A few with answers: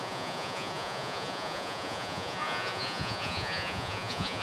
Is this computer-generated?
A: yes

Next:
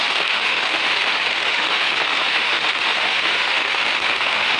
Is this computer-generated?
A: yes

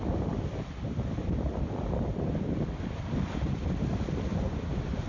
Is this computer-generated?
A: no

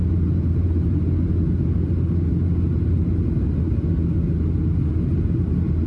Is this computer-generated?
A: no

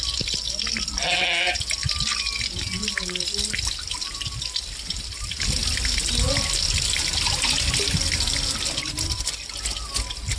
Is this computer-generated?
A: no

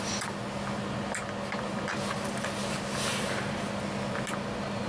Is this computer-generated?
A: no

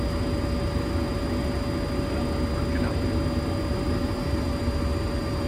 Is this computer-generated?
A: no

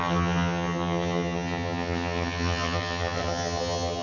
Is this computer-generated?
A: yes